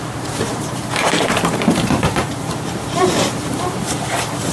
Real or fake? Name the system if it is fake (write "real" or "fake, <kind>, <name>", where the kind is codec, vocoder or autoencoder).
fake, vocoder, BigVGAN v2